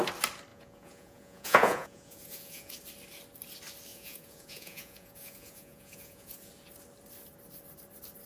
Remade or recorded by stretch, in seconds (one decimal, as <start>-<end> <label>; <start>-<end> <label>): 0.0-0.5 recorded; 0.5-2.7 remade; 2.7-3.9 recorded; 3.9-6.5 remade; 6.5-8.3 recorded